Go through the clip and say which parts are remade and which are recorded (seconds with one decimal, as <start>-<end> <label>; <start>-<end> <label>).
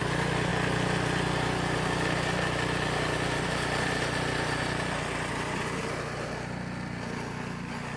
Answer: 0.0-8.0 recorded